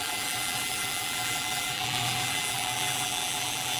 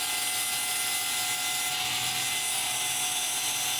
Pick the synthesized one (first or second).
first